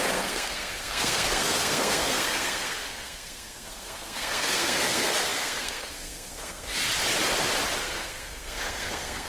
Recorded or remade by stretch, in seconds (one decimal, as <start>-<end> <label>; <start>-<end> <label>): 0.0-6.8 remade; 6.8-7.8 recorded; 7.8-9.3 remade